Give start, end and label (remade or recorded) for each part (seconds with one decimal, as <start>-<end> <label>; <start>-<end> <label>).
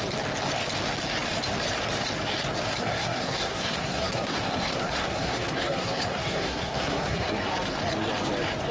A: 0.0-2.8 recorded; 2.8-7.4 remade; 7.4-8.7 recorded